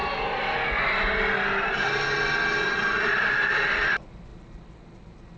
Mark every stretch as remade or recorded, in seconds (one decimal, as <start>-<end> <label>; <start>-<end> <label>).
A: 0.0-3.0 recorded; 3.0-4.3 remade; 4.3-5.4 recorded